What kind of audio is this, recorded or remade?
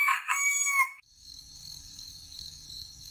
remade